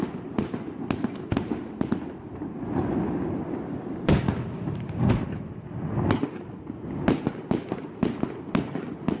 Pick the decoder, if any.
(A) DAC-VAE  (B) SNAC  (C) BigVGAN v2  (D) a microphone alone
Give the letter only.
D